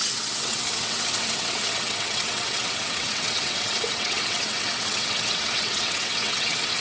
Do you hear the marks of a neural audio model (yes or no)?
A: yes